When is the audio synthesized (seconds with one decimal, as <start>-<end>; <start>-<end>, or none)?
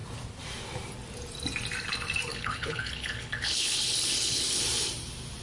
2.3-4.6